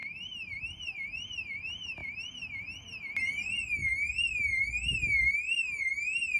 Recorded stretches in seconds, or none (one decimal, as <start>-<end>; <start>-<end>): 0.0-0.6; 2.0-5.8